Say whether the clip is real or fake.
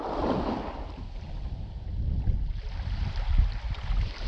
real